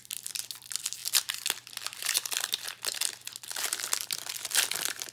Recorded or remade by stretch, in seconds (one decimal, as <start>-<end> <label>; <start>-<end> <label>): 0.0-5.1 recorded